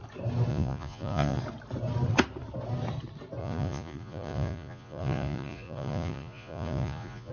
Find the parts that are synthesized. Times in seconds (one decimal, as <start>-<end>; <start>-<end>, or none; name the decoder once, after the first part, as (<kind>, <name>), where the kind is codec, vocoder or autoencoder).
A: 0.5-1.4 (vocoder, Vocos); 3.4-7.3